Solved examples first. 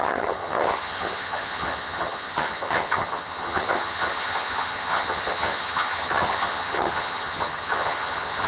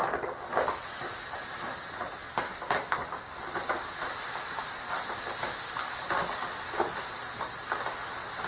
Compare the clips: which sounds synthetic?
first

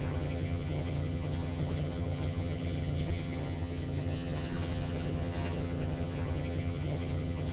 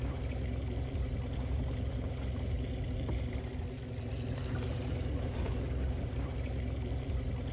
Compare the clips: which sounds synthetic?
first